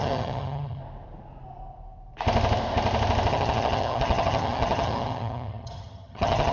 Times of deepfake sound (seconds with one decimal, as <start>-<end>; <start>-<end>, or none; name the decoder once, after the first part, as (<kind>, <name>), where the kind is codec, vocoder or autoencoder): 0.0-0.8 (vocoder, HiFi-GAN); 3.3-6.5